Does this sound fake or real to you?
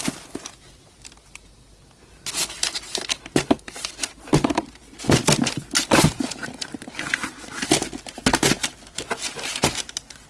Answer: real